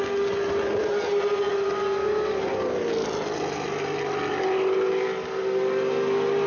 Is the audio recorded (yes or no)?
yes